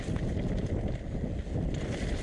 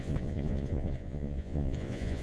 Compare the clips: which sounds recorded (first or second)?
first